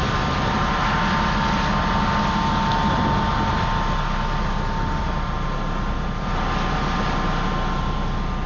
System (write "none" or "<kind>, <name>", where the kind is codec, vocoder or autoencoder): none